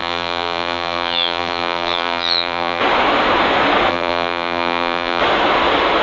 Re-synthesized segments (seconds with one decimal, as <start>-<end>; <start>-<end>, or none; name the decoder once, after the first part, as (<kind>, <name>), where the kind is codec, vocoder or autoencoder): 0.0-2.8 (vocoder, BigVGAN v2); 3.9-5.2